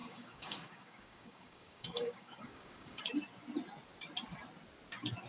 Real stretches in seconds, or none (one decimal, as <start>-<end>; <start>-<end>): 3.0-5.3